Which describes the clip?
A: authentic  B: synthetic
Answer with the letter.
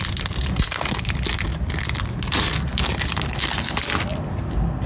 A